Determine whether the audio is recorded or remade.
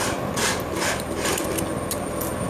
recorded